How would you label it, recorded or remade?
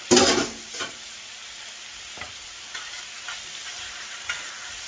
recorded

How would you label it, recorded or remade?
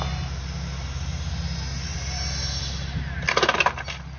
recorded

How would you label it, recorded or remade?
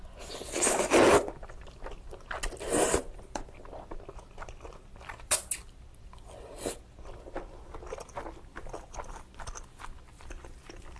recorded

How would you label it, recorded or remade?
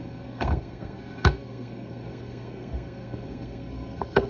remade